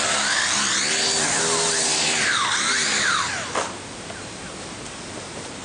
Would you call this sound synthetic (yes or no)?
no